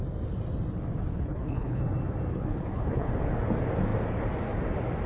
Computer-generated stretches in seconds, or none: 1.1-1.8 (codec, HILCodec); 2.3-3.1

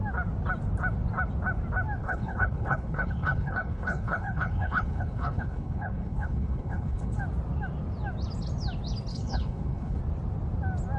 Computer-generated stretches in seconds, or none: 2.0-7.2 (codec, HILCodec); 9.1-10.0

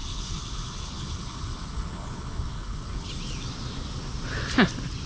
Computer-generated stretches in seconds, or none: 0.0-3.1 (codec, HILCodec)

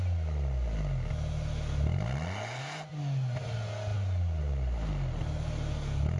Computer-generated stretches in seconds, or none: none

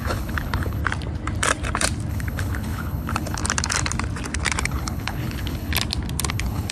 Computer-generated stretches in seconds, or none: 0.0-0.8 (codec, HILCodec); 2.1-3.4; 4.6-5.7; 6.3-6.7

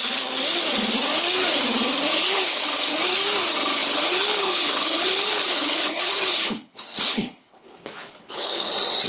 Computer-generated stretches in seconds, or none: 2.1-2.9 (codec, HILCodec); 3.8-8.7